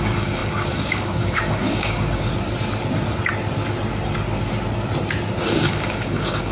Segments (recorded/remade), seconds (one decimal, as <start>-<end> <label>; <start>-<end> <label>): 0.0-2.3 remade; 2.3-5.4 recorded; 5.4-6.5 remade